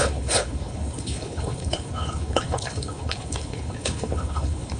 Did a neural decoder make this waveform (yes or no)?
yes